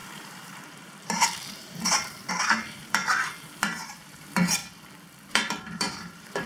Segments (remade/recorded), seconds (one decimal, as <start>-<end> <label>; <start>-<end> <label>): 0.0-3.0 remade; 3.0-3.6 recorded; 3.6-4.6 remade; 4.6-5.3 recorded; 5.3-6.5 remade